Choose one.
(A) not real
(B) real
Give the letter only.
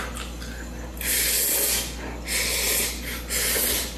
B